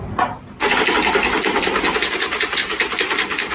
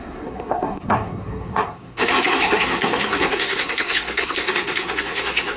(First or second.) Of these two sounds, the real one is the first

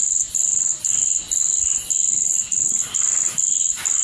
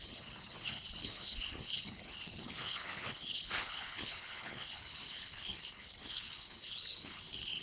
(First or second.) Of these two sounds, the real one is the first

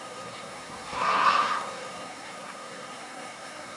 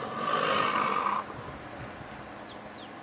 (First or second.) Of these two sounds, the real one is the second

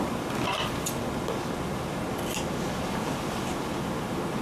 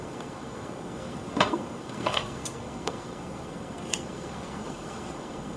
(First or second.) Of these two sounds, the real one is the first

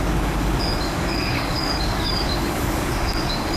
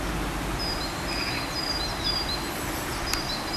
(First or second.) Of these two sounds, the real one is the second